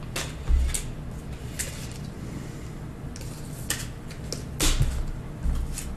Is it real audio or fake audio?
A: real